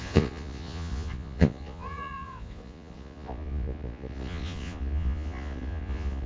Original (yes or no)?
no